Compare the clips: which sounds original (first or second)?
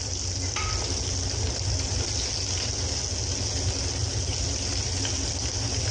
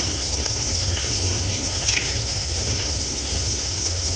first